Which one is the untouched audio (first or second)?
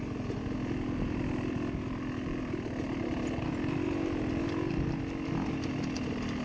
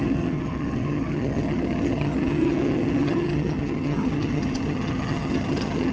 first